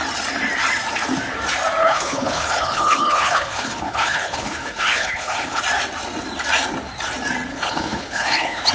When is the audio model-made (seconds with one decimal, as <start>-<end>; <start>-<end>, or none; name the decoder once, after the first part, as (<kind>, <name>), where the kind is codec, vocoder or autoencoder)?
1.8-5.6 (codec, HILCodec); 7.5-8.7